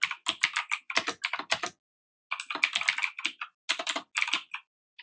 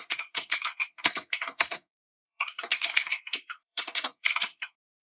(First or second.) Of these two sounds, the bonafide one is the first